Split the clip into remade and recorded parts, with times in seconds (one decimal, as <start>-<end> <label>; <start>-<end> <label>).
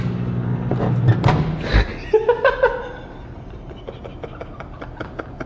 0.0-5.5 recorded